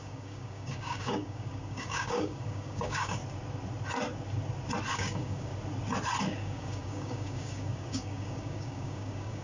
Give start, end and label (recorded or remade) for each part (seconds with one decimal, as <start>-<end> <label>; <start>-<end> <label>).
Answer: 0.0-3.2 remade; 3.2-4.9 recorded; 4.9-5.5 remade; 5.5-6.2 recorded; 6.2-9.4 remade